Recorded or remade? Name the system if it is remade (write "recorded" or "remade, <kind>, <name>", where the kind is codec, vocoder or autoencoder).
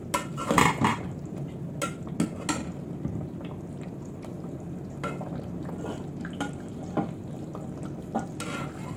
recorded